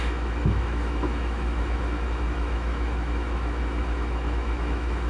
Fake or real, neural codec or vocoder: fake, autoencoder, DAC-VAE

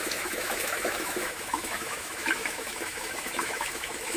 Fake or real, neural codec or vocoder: fake, autoencoder, DAC-VAE